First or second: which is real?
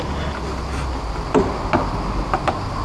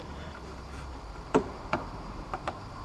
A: first